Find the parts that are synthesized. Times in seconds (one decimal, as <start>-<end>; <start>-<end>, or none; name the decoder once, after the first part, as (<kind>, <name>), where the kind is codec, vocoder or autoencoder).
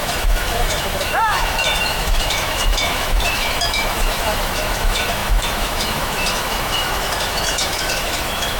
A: 0.0-8.6 (autoencoder, DAC-VAE)